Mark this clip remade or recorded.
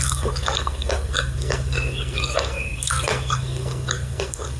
remade